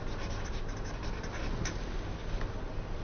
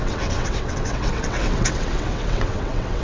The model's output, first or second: second